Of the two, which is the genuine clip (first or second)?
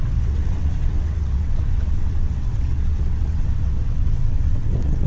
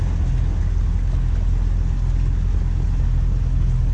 second